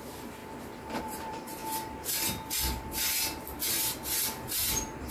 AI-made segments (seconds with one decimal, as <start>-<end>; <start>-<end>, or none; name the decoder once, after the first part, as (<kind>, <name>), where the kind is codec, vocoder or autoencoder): 0.0-0.4 (vocoder, BigVGAN v2); 1.0-1.6